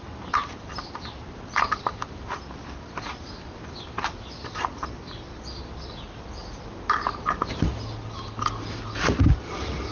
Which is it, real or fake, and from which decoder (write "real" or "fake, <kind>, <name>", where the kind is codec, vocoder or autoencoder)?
real